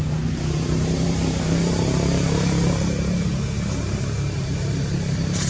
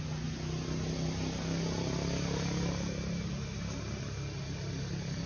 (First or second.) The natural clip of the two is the second